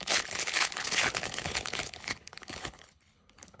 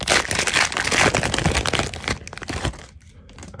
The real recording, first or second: second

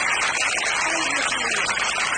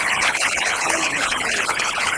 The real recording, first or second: first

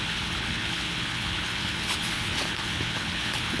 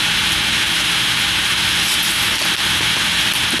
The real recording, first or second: second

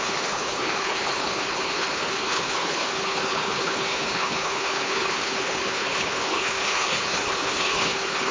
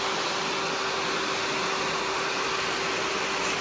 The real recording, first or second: second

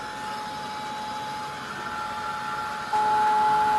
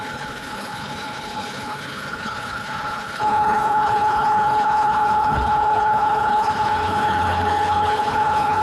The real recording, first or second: first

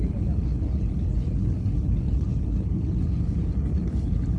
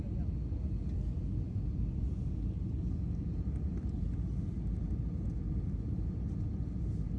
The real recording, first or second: second